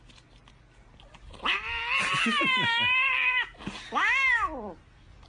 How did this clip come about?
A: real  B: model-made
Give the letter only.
A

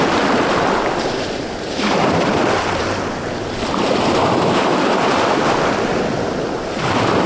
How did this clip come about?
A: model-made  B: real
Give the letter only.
A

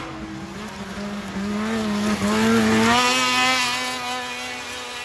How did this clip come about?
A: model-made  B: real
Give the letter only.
B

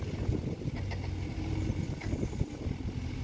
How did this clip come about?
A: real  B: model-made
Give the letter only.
A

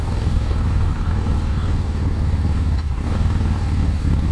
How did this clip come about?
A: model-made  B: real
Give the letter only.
A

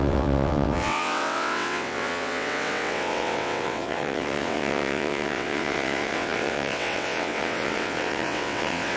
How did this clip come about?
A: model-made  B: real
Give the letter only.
A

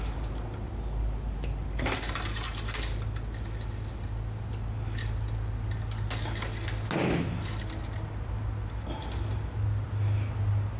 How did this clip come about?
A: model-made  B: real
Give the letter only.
B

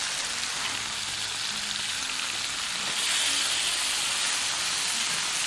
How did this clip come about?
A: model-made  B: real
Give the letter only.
B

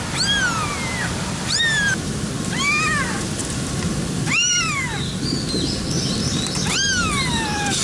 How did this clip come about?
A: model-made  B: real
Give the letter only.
B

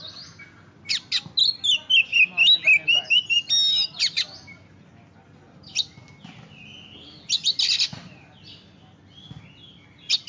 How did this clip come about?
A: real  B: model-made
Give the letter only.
A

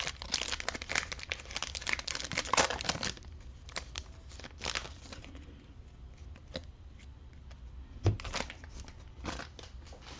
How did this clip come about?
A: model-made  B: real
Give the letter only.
B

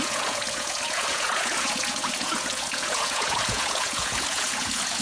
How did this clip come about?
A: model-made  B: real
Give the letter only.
A